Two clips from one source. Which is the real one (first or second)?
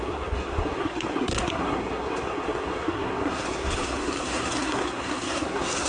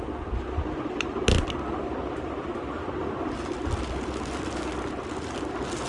second